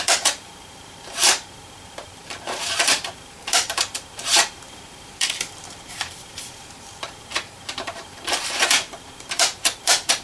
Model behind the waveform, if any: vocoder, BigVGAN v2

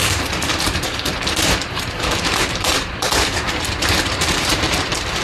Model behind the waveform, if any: vocoder, BigVGAN v2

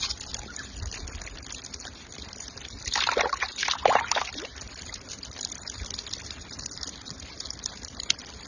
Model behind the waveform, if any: vocoder, BigVGAN v2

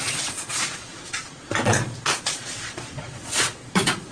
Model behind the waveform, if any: vocoder, Vocos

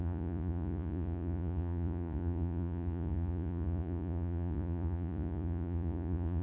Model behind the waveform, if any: vocoder, Vocos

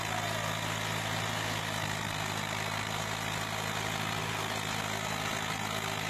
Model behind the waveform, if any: none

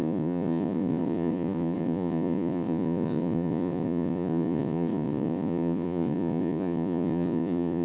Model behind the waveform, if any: vocoder, Vocos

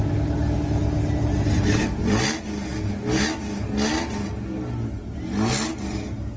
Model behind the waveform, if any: none